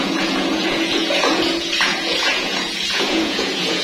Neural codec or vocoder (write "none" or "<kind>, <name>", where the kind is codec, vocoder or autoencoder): vocoder, Vocos